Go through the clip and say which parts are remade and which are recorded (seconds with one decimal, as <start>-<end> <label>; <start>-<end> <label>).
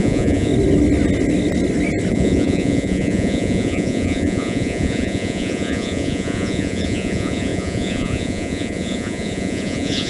0.0-0.5 remade; 0.5-2.1 recorded; 2.1-10.1 remade